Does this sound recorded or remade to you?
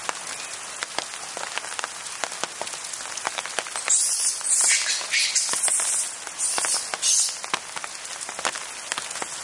recorded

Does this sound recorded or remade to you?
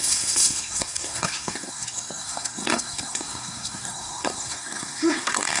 remade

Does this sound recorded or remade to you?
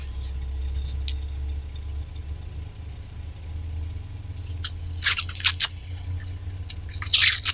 recorded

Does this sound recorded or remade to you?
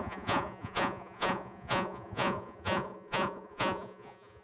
remade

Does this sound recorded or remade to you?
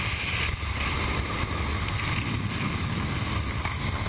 recorded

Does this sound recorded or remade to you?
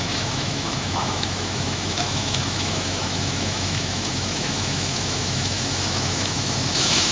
remade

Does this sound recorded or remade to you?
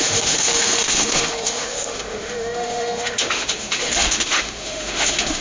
remade